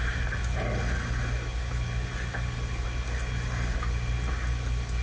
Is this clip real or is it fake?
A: real